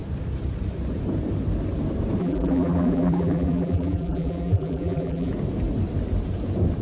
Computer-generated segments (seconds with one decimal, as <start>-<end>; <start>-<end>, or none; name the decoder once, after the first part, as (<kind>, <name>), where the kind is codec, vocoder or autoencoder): 2.2-5.3 (vocoder, BigVGAN v2)